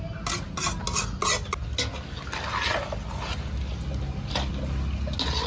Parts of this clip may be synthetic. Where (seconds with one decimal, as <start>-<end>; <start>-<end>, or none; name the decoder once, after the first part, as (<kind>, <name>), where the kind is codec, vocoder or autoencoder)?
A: none